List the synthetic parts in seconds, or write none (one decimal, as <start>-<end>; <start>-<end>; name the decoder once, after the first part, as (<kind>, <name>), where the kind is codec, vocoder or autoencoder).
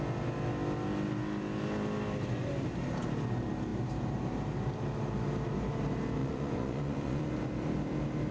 6.2-7.3 (vocoder, Vocos)